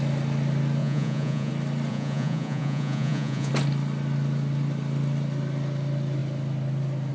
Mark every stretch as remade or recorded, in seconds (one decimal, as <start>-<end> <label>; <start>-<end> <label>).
0.0-0.8 recorded; 0.8-1.5 remade; 1.5-1.9 recorded; 1.9-3.5 remade; 3.5-7.1 recorded